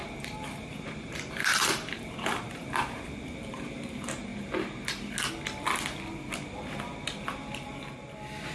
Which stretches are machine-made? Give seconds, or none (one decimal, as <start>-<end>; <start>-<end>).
0.0-3.8